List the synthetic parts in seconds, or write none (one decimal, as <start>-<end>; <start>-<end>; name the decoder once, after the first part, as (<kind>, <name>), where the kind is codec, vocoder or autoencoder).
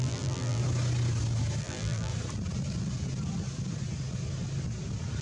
0.0-0.6 (vocoder, BigVGAN v2); 1.6-2.1